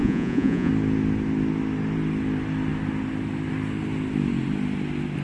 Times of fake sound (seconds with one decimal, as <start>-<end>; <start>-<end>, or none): 0.0-0.7